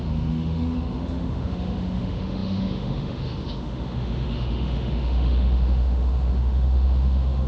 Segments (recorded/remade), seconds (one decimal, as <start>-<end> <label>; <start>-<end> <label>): 0.0-7.5 remade